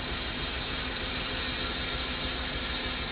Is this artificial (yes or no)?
no